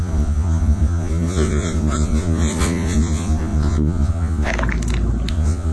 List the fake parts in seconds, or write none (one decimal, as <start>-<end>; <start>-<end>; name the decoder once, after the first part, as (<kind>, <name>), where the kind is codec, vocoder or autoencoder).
0.0-4.5 (vocoder, Vocos); 5.3-5.7